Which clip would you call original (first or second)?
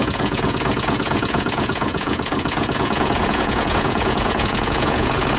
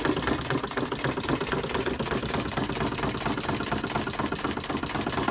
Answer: second